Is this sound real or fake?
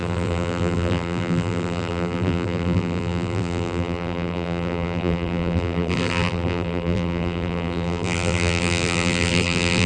fake